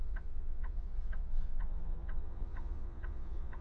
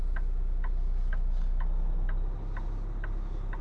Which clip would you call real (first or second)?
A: second